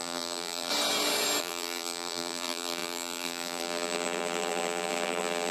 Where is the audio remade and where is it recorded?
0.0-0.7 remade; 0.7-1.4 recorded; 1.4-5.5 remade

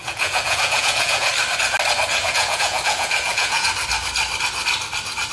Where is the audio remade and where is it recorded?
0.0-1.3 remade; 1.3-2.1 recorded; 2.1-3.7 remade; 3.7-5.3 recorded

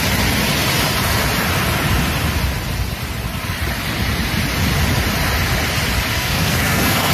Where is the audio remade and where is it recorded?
0.0-6.1 recorded; 6.1-7.1 remade